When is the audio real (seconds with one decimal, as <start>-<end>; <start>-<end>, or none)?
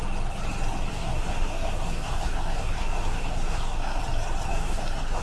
0.0-0.9; 4.0-4.5